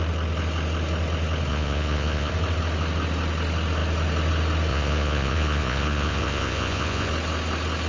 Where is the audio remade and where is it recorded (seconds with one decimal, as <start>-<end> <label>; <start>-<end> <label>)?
0.0-1.5 recorded; 1.5-2.3 remade; 2.3-4.7 recorded; 4.7-7.1 remade; 7.1-7.9 recorded